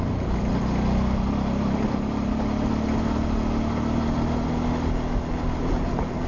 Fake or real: real